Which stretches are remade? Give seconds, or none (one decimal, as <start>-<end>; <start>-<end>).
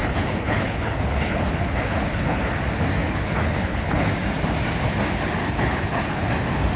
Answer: 0.0-2.5; 3.0-4.1; 5.4-6.3